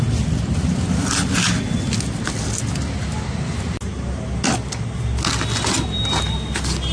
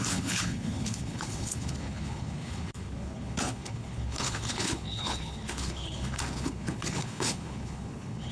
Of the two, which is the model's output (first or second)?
second